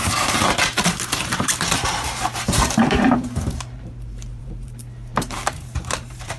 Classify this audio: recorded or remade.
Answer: remade